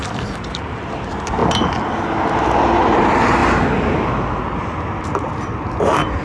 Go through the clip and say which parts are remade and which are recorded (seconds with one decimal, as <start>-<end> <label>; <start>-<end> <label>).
0.0-1.4 remade; 1.4-2.6 recorded; 2.6-3.4 remade; 3.4-4.4 recorded; 4.4-6.2 remade